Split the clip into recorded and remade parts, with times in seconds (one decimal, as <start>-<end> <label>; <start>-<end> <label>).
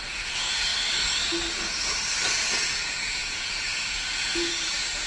0.0-0.7 remade; 0.7-2.3 recorded; 2.3-5.1 remade